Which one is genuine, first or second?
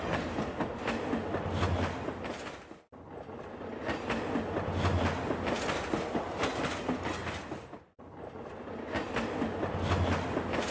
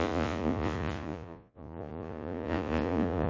first